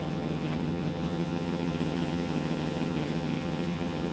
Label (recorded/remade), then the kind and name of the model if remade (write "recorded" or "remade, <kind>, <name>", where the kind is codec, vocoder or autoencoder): remade, vocoder, HiFi-GAN